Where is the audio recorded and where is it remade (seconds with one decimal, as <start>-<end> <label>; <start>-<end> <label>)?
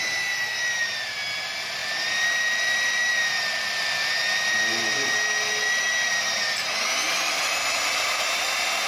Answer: 0.0-8.9 recorded